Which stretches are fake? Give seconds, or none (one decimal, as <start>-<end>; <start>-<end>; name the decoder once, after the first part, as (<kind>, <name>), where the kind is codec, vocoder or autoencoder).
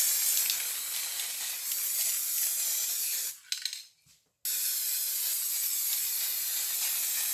none